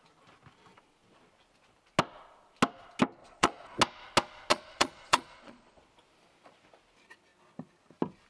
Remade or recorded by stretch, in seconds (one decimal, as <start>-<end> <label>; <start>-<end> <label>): 0.0-3.2 recorded; 3.2-3.8 remade; 3.8-4.5 recorded; 4.5-5.8 remade; 5.8-8.3 recorded